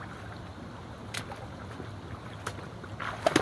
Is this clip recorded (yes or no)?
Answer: yes